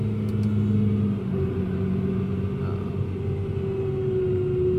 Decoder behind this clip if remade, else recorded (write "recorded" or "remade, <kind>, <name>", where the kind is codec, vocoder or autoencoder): recorded